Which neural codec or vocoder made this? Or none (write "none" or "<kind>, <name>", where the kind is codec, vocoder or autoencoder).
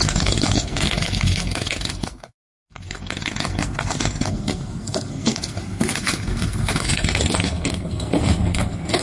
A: codec, SNAC